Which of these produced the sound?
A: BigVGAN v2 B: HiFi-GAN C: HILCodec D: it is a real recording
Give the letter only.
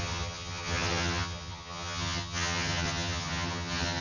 B